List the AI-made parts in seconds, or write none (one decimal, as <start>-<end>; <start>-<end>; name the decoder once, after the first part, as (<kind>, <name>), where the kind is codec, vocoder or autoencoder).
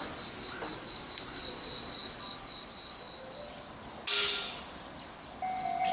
none